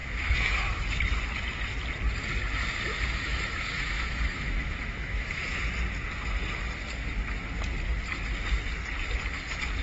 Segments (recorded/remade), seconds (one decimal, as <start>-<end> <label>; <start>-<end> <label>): 0.0-1.0 remade; 1.0-2.9 recorded; 2.9-5.6 remade; 5.6-9.8 recorded